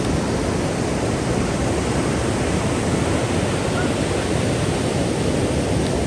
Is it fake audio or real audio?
real